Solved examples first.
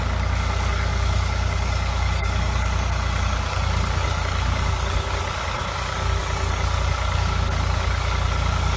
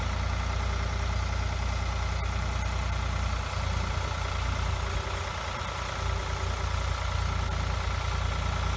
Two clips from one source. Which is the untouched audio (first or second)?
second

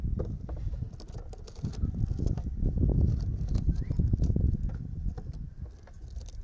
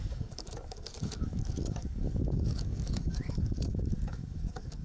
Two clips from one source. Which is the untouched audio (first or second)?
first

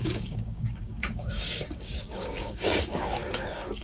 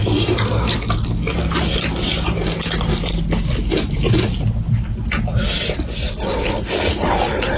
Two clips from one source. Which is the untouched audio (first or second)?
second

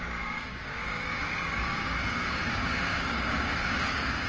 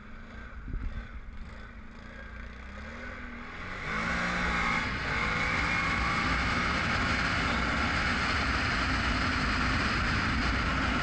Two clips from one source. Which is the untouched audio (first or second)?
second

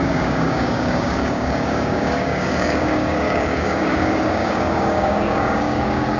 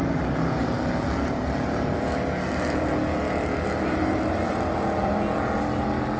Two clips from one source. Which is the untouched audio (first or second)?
second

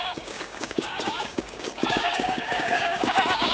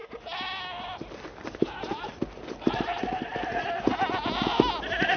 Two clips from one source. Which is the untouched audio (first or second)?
second